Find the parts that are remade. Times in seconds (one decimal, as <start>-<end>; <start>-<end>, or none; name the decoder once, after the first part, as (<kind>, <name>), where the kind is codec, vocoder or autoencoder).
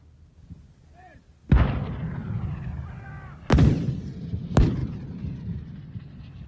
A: 4.8-5.6 (vocoder, BigVGAN v2)